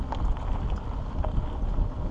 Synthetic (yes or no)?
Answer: no